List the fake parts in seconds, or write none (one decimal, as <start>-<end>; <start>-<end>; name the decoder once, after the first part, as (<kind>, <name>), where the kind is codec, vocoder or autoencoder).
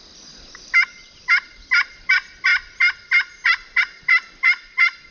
none